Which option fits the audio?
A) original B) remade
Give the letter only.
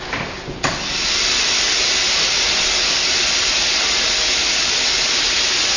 A